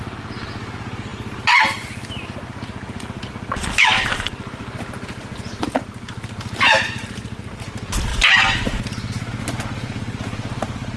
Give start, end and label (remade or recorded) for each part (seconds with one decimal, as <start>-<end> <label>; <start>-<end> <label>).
0.0-11.0 recorded